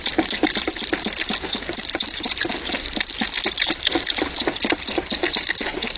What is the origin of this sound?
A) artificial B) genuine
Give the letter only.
B